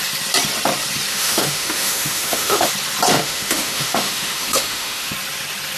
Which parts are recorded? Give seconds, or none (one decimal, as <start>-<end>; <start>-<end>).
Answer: 0.0-1.1; 2.7-3.1; 5.1-5.8

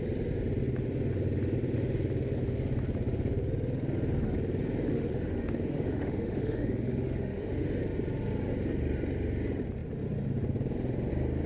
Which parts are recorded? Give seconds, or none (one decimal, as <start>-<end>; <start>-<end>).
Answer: 0.0-4.9; 7.8-11.5

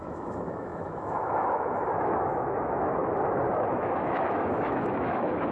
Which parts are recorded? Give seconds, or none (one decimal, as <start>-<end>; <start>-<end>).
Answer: 3.0-3.7

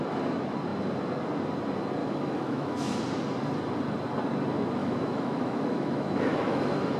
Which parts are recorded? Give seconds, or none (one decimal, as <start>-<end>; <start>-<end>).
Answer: 0.0-2.0; 3.0-4.8

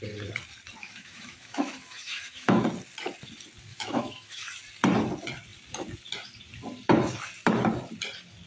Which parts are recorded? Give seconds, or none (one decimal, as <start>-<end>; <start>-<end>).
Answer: 0.0-0.8; 2.6-3.7; 4.6-8.5

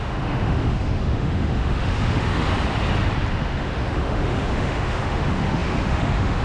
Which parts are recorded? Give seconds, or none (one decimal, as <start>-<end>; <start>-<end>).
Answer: 2.5-3.3

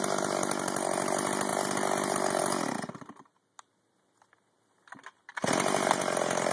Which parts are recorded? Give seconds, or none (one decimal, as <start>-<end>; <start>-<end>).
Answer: 0.0-6.5